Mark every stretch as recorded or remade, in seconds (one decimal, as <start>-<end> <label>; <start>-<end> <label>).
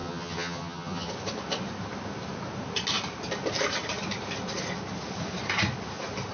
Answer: 0.0-1.1 remade; 1.1-6.3 recorded